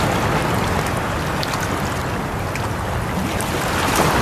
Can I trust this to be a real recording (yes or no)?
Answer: yes